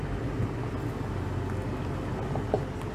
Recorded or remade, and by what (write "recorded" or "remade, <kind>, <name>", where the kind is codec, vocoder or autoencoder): recorded